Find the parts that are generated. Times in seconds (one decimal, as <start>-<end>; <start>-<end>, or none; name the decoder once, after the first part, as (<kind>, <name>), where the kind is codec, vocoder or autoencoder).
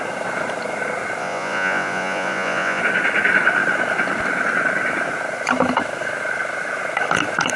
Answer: 1.2-2.8 (vocoder, Vocos)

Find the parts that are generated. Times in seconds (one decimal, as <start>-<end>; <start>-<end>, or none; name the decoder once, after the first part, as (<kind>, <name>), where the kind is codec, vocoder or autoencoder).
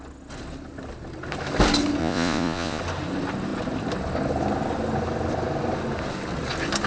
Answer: 2.0-2.8 (vocoder, Vocos)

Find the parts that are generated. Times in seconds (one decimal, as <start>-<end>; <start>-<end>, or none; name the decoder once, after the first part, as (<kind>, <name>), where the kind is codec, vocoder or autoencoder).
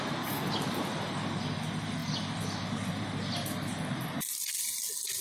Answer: none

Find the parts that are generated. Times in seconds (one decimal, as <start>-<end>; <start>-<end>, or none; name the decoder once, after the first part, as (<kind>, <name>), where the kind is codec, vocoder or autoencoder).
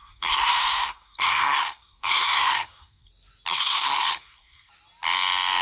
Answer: 0.0-3.1 (codec, SNAC); 3.5-4.7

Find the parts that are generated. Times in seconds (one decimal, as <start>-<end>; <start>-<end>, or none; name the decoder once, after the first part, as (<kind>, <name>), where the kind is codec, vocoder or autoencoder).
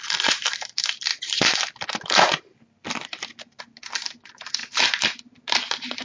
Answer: none